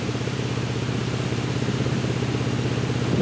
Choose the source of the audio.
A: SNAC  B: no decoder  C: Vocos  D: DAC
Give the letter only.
B